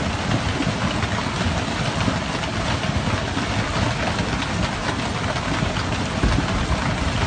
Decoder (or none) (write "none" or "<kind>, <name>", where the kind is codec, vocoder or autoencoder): none